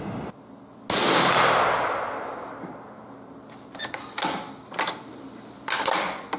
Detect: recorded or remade recorded